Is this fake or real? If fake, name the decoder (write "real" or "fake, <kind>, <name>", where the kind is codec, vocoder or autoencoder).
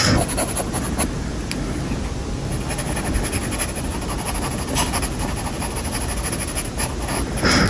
real